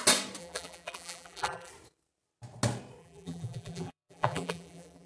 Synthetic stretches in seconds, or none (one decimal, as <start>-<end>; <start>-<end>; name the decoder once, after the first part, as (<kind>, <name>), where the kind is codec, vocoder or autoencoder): 0.4-1.7 (vocoder, BigVGAN v2); 3.0-5.1